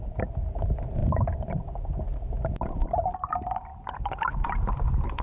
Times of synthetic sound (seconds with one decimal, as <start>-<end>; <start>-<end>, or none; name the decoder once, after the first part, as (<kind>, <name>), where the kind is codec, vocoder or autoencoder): 3.7-5.2 (vocoder, BigVGAN v2)